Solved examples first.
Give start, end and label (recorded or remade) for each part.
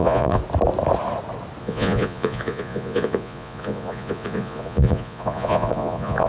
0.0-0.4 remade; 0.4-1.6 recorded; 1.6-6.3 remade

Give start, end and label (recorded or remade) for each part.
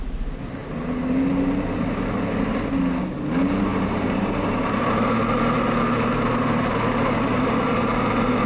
0.0-3.7 recorded; 3.7-5.2 remade; 5.2-5.9 recorded; 5.9-8.1 remade; 8.1-8.5 recorded